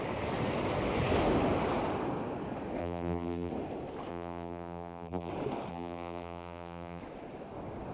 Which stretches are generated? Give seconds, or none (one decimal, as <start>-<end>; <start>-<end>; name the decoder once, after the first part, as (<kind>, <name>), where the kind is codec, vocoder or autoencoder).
2.8-3.5 (vocoder, BigVGAN v2); 4.1-5.3; 5.7-7.0